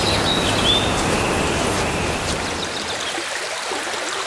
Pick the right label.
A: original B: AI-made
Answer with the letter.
A